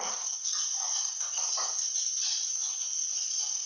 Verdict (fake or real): fake